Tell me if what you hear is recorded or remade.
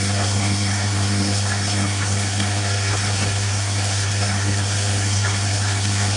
remade